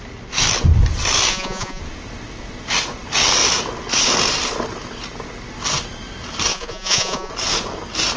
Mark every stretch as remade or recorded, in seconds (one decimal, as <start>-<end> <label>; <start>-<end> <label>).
0.0-1.3 recorded; 1.3-1.8 remade; 1.8-6.5 recorded; 6.5-7.3 remade; 7.3-8.2 recorded

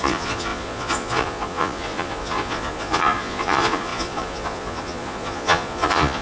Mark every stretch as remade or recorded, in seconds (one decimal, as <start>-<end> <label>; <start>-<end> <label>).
0.0-6.2 remade

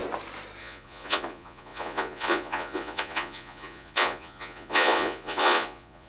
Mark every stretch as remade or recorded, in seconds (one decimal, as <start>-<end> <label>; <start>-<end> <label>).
0.0-0.6 recorded; 0.6-6.1 remade

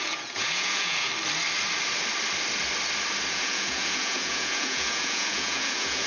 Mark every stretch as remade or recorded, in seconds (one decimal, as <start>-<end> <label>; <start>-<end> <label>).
0.0-1.1 remade; 1.1-3.3 recorded; 3.3-6.1 remade

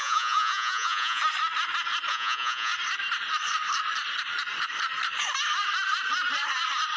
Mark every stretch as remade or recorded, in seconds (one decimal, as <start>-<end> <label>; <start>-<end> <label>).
0.0-1.2 remade; 1.2-2.1 recorded; 2.1-2.7 remade; 2.7-7.0 recorded

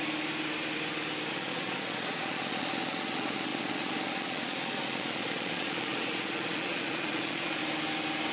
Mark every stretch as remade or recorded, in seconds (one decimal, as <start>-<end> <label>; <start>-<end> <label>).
0.0-1.3 recorded; 1.3-7.6 remade; 7.6-8.3 recorded